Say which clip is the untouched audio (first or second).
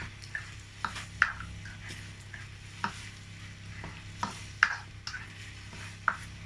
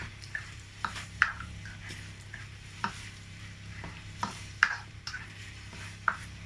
first